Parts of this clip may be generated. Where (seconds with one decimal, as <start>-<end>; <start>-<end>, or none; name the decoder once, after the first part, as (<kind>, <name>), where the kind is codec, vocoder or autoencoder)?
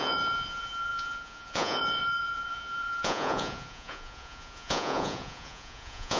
0.0-6.2 (vocoder, Vocos)